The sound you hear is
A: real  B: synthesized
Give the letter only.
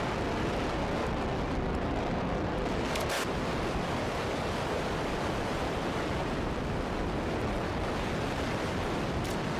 A